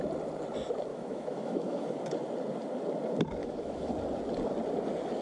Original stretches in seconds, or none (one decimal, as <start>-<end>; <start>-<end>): 0.0-0.9; 2.0-3.4; 3.9-5.2